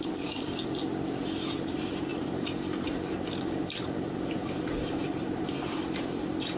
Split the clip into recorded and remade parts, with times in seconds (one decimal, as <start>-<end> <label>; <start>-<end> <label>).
0.0-0.6 remade; 0.6-1.5 recorded; 1.5-6.6 remade